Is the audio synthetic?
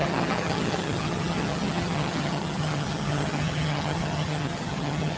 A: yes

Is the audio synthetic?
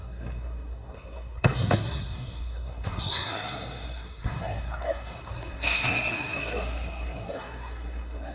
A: yes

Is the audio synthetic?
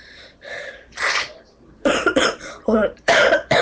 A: yes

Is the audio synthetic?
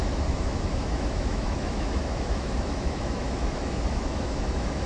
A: yes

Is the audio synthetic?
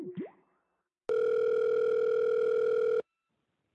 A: no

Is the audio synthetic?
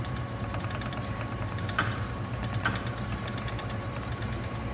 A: yes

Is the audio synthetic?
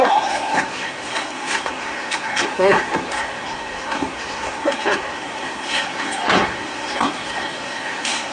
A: yes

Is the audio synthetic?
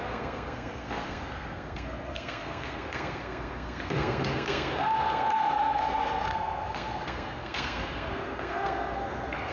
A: yes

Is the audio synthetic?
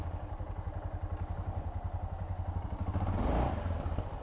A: no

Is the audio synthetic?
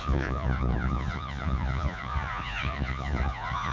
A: yes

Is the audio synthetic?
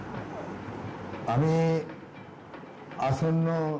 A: no